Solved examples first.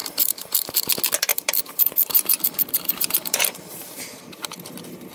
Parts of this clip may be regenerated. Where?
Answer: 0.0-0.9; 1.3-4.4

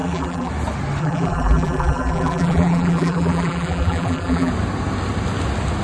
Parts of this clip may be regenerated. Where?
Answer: 0.0-0.5; 1.0-4.5

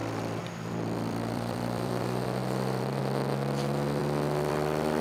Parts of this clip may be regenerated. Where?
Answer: 0.0-3.0

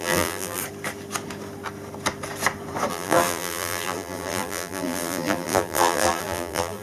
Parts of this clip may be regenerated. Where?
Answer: 0.0-0.6; 2.9-6.8

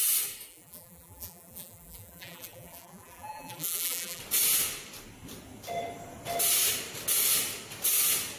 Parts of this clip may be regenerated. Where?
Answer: 0.5-4.2

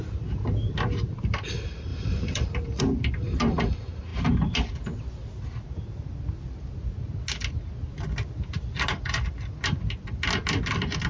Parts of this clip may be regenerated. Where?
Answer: 1.9-2.8